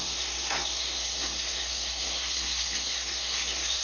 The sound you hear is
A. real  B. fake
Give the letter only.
B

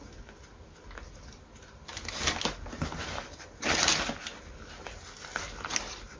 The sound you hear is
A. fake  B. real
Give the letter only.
B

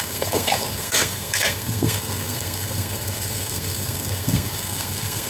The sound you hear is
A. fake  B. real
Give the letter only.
A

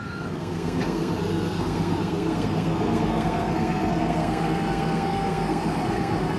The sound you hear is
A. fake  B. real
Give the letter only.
A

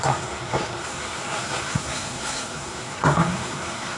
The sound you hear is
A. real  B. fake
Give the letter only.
B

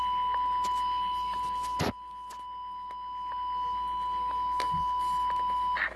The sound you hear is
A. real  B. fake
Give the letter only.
A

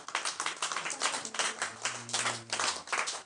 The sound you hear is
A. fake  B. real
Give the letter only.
B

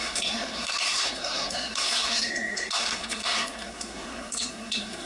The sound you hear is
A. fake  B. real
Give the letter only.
A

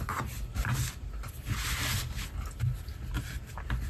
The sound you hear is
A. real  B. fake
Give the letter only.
A